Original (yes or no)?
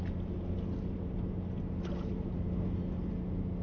yes